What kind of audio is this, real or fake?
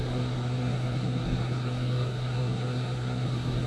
fake